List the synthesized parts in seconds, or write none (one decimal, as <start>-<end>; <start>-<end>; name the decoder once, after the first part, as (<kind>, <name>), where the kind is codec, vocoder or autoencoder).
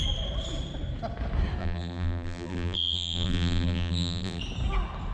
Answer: 1.6-4.4 (vocoder, BigVGAN v2)